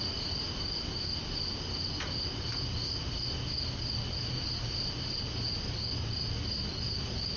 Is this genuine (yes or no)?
yes